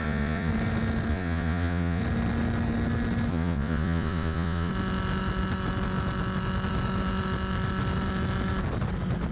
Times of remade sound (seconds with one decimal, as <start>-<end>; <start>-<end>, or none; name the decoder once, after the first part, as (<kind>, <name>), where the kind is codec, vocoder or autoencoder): 0.0-0.5 (vocoder, Vocos); 1.1-2.0; 3.3-4.7